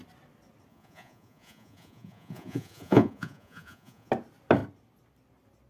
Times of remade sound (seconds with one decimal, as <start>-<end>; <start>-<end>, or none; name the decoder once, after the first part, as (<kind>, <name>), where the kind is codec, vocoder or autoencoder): 0.7-4.1 (vocoder, Vocos)